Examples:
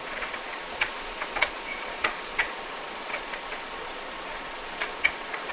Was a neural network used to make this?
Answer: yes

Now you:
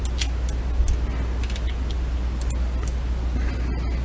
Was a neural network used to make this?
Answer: no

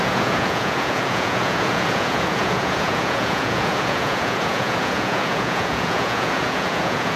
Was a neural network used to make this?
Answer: yes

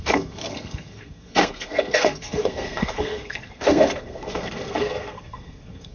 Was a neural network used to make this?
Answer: yes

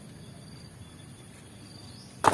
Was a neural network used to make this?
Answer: no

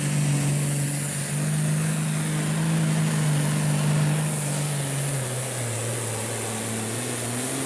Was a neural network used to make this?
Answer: no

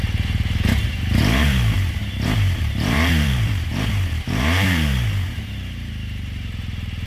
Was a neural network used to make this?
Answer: yes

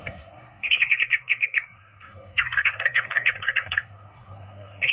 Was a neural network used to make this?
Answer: yes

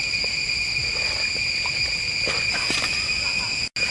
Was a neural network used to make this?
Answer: no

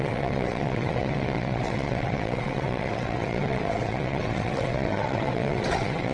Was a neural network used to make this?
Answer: yes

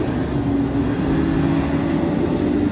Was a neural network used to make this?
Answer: no